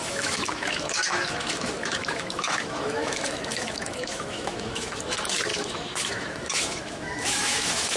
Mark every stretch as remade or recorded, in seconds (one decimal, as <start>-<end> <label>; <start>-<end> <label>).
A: 0.0-8.0 remade